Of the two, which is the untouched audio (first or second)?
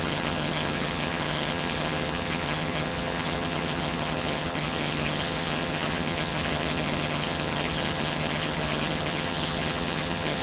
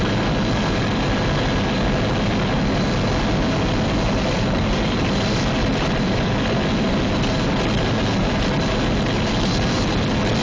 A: second